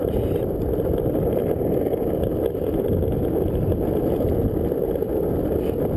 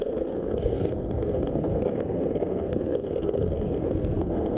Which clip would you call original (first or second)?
first